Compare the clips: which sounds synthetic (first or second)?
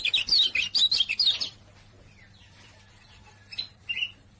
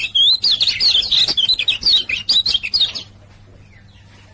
first